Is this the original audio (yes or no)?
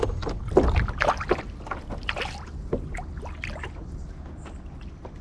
yes